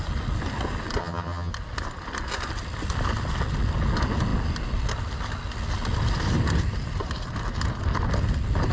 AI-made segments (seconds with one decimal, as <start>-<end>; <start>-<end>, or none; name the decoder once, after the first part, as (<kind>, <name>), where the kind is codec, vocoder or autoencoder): 1.0-1.5 (vocoder, HiFi-GAN)